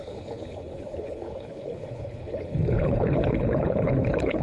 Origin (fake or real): fake